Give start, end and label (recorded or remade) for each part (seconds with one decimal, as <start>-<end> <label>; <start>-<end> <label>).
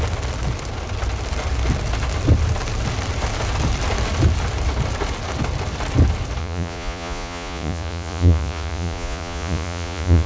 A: 0.0-6.4 recorded; 6.4-10.3 remade